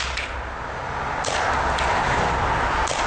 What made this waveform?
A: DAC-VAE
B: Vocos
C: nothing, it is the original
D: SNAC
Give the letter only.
C